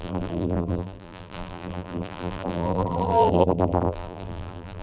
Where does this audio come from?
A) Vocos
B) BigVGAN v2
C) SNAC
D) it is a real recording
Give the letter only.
B